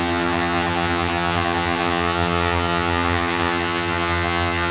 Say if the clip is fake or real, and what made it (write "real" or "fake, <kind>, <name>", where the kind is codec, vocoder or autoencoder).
fake, vocoder, HiFi-GAN